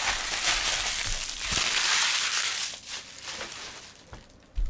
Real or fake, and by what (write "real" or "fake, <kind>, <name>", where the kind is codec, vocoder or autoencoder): real